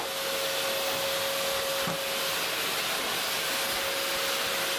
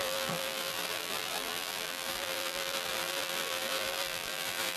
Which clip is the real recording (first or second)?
first